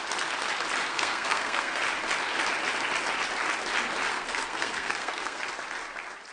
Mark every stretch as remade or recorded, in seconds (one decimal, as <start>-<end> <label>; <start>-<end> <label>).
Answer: 0.0-0.9 recorded; 0.9-1.8 remade; 1.8-4.1 recorded; 4.1-5.4 remade; 5.4-6.3 recorded